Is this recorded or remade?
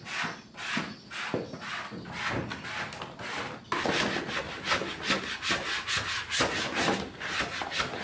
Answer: recorded